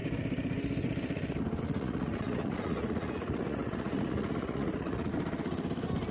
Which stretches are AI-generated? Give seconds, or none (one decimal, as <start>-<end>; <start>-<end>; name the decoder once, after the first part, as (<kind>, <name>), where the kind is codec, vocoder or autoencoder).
1.6-5.1 (vocoder, Vocos)